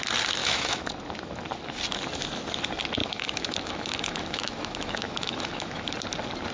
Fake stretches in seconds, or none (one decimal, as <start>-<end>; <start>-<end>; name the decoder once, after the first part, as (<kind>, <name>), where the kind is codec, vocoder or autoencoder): 0.4-0.9 (autoencoder, DAC-VAE); 3.0-5.9